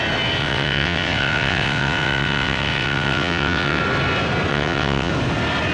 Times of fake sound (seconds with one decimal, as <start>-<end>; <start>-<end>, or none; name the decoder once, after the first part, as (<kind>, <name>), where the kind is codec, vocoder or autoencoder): 0.4-3.8 (vocoder, WaveNeXt); 4.5-5.1